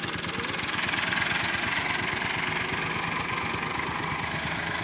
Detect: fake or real real